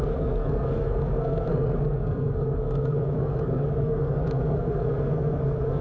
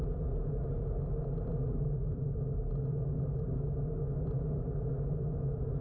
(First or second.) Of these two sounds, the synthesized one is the first